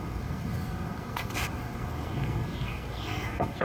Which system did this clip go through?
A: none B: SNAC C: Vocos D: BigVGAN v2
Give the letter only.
B